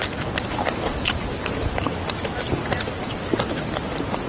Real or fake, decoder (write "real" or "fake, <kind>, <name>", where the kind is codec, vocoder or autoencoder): fake, vocoder, BigVGAN v2